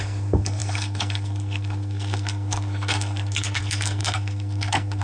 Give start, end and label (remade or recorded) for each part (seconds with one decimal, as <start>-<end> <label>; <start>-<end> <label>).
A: 0.0-5.0 remade